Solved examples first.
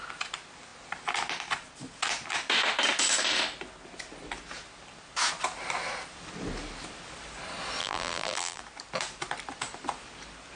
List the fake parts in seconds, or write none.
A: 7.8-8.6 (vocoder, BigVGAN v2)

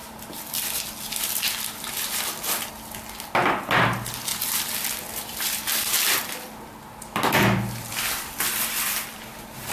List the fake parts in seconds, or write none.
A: 4.3-9.7 (vocoder, BigVGAN v2)

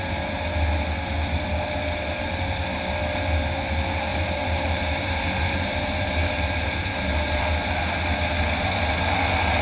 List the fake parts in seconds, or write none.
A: 4.1-7.4 (vocoder, BigVGAN v2)

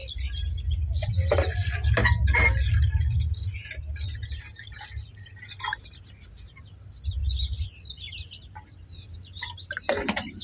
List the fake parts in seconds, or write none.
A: 0.0-1.1 (vocoder, BigVGAN v2); 7.2-9.9

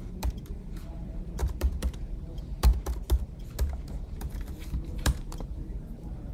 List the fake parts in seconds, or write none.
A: 0.0-2.7 (vocoder, BigVGAN v2); 3.9-6.3

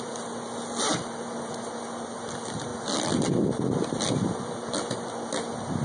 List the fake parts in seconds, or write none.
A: none

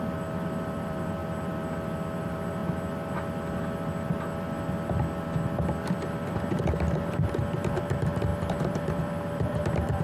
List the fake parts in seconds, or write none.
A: 0.0-1.2 (vocoder, BigVGAN v2); 2.2-2.6; 5.9-10.0